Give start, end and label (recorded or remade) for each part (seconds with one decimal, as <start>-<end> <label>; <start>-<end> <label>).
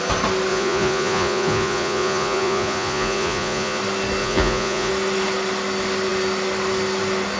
0.0-0.5 recorded; 0.5-3.8 remade; 3.8-4.2 recorded; 4.2-4.9 remade; 4.9-7.4 recorded